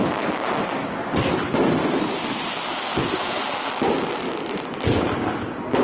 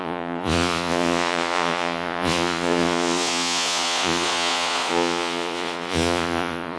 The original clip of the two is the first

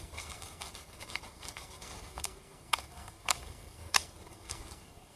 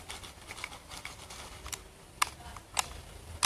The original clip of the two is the second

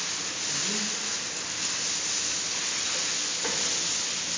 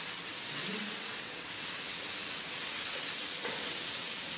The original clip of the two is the first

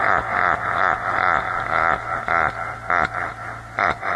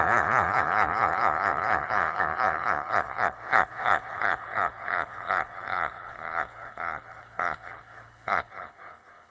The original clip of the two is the first